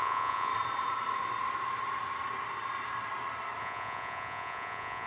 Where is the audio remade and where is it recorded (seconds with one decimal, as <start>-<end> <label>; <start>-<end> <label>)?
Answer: 0.0-0.5 remade; 0.5-3.6 recorded; 3.6-5.1 remade